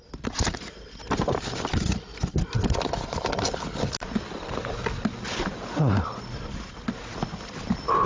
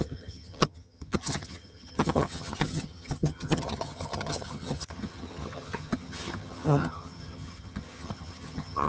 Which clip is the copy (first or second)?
second